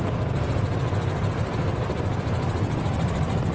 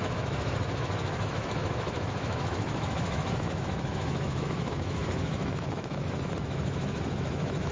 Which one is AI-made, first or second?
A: second